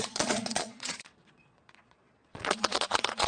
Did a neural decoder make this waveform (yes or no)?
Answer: yes